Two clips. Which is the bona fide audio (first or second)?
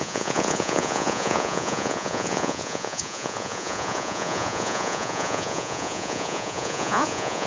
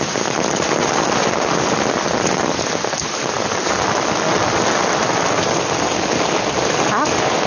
second